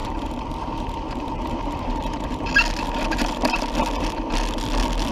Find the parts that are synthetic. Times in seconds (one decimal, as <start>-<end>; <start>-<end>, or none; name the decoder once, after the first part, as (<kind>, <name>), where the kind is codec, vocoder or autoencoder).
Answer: 0.0-2.3 (vocoder, BigVGAN v2)